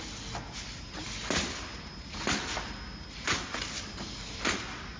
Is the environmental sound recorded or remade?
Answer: recorded